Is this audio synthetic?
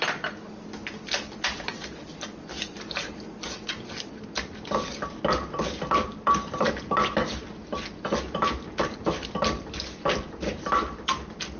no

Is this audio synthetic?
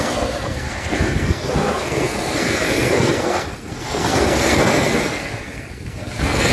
yes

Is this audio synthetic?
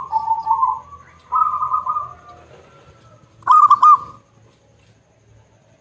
no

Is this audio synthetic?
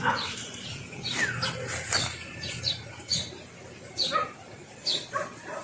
no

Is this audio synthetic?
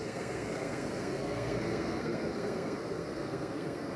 yes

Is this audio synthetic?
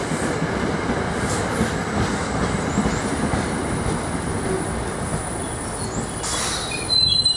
no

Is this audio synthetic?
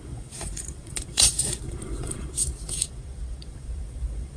yes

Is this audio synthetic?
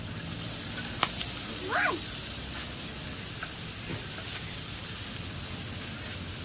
no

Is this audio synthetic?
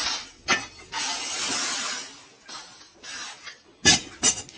no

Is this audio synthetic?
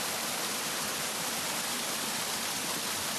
no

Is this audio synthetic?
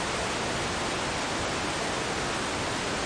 no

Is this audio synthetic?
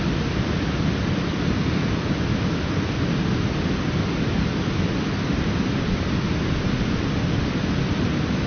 no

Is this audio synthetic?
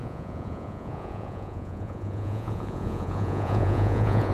yes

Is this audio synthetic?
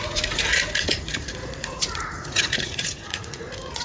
yes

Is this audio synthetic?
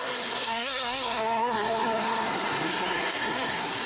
yes